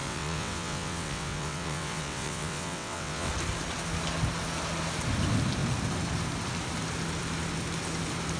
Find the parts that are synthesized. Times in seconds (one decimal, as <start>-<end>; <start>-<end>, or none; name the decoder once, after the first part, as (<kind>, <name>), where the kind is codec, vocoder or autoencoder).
0.0-3.3 (vocoder, WaveNeXt)